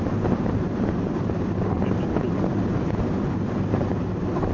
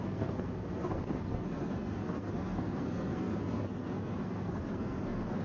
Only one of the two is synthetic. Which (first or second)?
second